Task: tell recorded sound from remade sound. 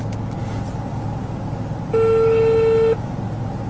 recorded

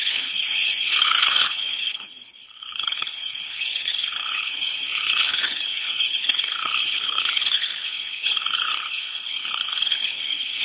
remade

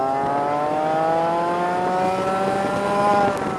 recorded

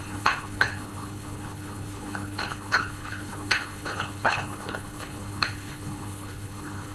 remade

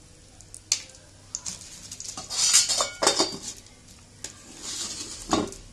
recorded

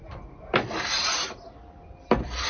recorded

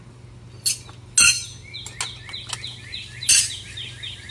recorded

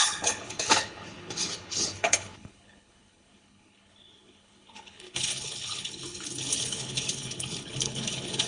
remade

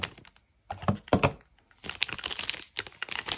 recorded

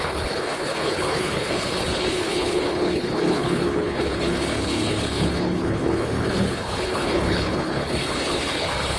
remade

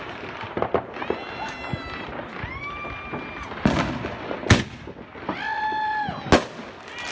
recorded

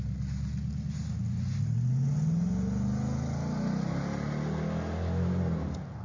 recorded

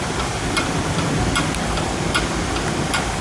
recorded